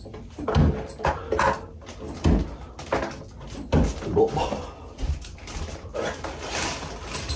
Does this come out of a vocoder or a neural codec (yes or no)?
no